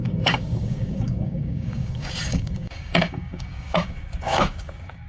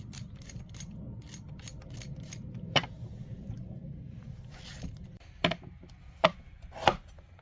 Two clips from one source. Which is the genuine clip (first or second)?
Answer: second